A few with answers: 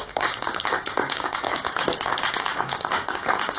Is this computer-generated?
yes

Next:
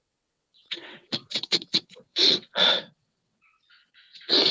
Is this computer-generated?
yes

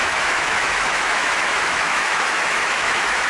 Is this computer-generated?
yes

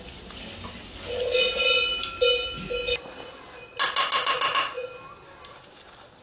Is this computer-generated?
no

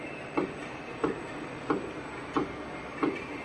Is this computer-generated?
no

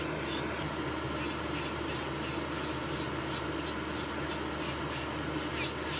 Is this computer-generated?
no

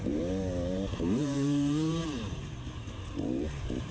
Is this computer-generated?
yes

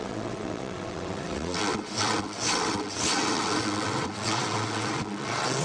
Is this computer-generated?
yes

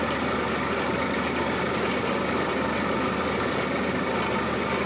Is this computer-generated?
no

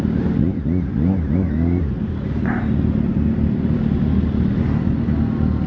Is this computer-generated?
no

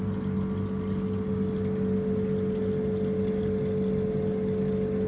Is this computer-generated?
no